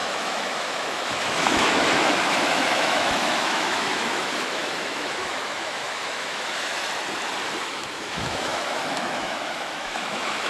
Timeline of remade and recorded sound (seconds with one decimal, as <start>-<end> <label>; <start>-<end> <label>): 0.0-6.8 remade; 6.8-7.6 recorded; 7.6-10.5 remade